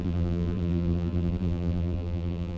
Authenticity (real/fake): fake